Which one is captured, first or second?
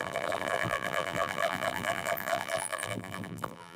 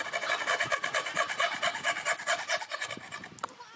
second